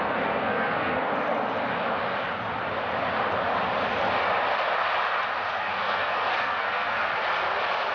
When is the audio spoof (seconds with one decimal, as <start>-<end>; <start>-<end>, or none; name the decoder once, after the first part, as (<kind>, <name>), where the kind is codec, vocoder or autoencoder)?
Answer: 0.0-1.1 (codec, SNAC); 5.8-7.1